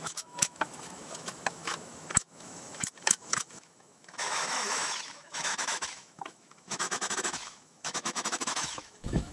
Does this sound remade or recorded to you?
remade